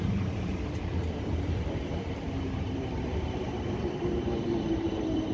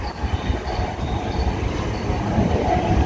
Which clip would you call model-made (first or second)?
first